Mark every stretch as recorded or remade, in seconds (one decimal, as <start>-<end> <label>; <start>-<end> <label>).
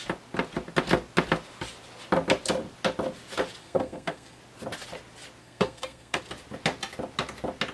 0.0-3.6 recorded; 3.6-4.4 remade; 4.4-5.4 recorded; 5.4-6.2 remade; 6.2-7.7 recorded